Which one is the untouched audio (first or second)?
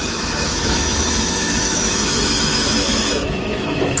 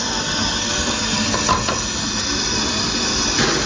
second